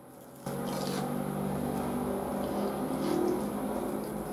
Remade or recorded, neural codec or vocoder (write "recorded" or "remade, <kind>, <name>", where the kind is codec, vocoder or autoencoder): recorded